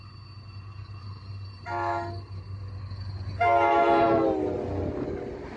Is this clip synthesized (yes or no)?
no